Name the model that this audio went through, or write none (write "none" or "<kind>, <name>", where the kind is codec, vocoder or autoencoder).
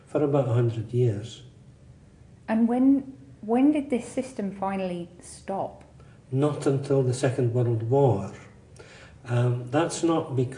none